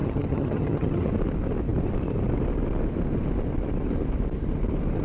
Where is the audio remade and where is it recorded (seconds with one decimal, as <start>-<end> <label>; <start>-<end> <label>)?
0.0-1.1 remade; 1.1-5.0 recorded